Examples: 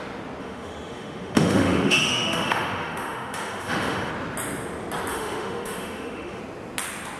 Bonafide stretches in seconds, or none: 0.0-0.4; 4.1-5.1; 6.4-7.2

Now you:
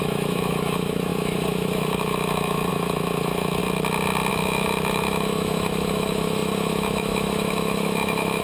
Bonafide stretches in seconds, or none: 3.6-4.3

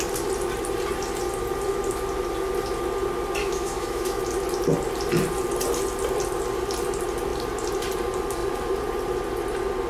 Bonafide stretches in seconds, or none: 0.0-3.4; 4.2-9.9

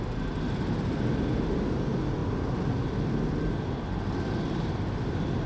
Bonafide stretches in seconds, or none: 0.0-5.5

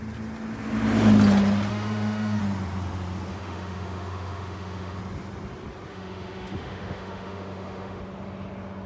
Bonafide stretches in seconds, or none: 0.0-1.7; 2.4-3.3; 5.0-5.9; 8.0-8.9

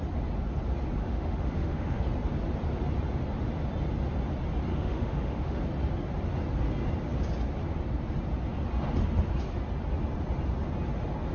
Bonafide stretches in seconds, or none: 0.0-1.0; 2.0-4.7; 5.6-11.3